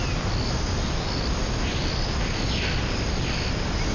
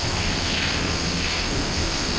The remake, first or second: second